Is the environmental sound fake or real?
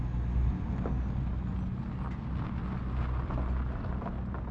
real